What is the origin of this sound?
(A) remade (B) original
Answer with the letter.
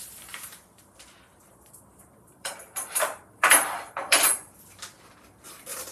A